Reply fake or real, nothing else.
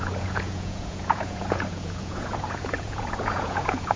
fake